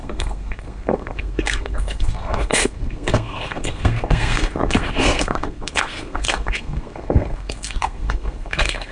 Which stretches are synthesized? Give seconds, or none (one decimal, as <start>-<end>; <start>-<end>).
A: 0.0-8.9